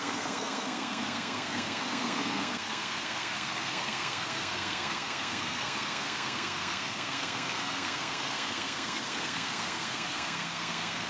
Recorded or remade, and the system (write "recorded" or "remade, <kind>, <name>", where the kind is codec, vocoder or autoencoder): remade, codec, SNAC